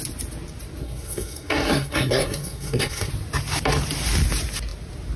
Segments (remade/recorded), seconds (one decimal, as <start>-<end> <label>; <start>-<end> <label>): 0.0-0.8 recorded; 0.8-3.1 remade; 3.1-5.2 recorded